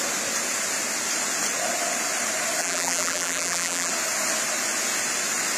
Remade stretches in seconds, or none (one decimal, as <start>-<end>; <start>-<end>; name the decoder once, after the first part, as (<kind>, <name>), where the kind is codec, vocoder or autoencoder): 2.6-3.9 (vocoder, BigVGAN v2)